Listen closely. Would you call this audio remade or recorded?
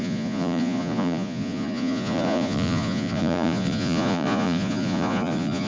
remade